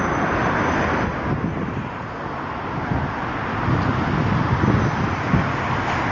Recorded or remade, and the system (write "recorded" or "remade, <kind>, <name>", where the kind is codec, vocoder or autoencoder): recorded